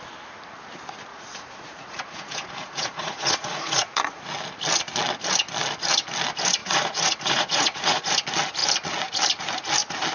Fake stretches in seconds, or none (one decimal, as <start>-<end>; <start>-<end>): 1.1-4.2; 6.6-8.1